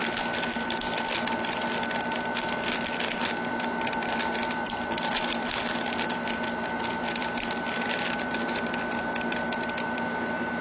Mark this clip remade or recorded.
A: recorded